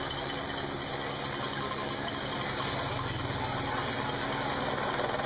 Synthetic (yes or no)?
no